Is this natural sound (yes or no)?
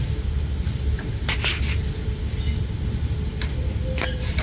yes